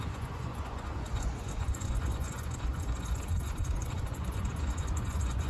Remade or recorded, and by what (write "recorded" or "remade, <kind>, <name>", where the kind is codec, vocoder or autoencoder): remade, vocoder, Vocos